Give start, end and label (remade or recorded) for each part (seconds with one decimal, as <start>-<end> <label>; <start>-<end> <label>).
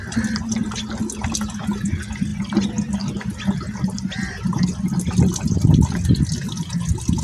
0.0-7.2 recorded